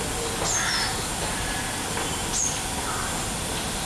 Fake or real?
real